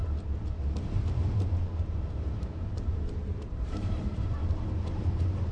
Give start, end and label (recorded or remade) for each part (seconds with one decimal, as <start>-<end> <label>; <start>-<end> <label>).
0.0-2.1 recorded; 2.1-4.4 remade; 4.4-5.5 recorded